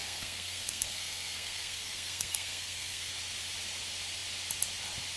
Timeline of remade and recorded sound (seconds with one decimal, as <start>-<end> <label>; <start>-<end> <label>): 0.0-3.1 remade; 3.1-5.2 recorded